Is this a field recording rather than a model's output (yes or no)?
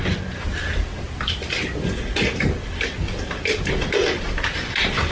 yes